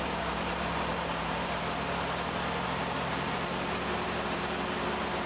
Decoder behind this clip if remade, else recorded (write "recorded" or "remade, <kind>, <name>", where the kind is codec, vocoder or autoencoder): remade, vocoder, BigVGAN v2